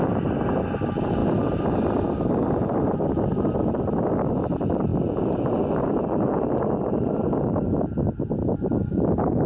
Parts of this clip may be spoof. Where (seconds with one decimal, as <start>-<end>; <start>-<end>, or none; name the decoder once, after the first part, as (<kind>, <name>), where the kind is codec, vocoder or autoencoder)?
none